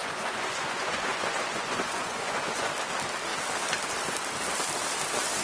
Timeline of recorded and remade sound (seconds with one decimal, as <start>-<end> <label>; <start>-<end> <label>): 0.0-2.7 remade; 2.7-5.4 recorded